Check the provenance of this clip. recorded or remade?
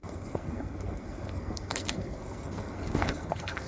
remade